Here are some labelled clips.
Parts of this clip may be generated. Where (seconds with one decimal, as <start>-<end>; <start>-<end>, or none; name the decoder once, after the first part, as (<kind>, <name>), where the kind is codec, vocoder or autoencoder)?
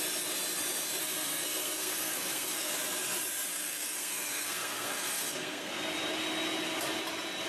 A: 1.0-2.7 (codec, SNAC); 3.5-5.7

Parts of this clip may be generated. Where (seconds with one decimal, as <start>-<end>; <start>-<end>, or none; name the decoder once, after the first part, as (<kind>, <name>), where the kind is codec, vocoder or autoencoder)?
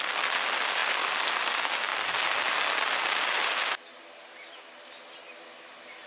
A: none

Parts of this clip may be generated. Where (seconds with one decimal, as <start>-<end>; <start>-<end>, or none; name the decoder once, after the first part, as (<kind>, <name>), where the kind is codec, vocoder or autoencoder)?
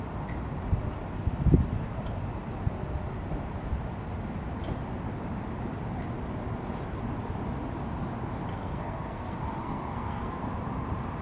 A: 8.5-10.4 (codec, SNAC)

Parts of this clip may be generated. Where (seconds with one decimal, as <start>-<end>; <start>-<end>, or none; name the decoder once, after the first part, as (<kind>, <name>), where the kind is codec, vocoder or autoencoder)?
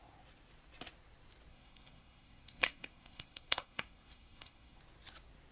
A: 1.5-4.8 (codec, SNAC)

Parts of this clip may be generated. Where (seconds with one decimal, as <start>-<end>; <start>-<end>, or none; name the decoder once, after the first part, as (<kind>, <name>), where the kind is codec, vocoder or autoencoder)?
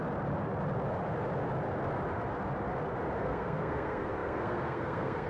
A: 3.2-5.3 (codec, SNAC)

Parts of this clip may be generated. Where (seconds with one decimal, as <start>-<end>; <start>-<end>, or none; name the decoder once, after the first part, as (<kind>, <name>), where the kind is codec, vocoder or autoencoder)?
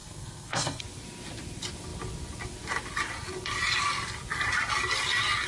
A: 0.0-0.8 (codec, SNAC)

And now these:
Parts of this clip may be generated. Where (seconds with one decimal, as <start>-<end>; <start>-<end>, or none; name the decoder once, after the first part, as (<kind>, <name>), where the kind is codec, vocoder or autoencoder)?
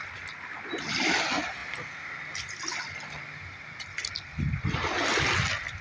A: none